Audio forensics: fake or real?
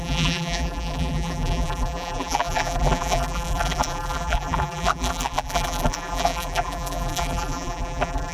fake